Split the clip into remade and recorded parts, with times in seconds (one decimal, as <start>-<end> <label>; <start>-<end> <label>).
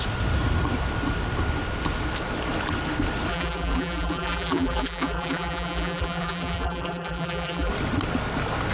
0.0-3.3 recorded; 3.3-7.7 remade; 7.7-8.7 recorded